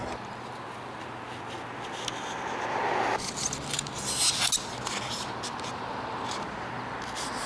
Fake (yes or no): no